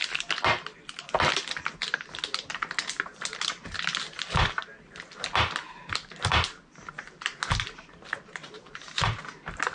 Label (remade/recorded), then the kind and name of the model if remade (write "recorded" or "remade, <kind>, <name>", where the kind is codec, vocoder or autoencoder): recorded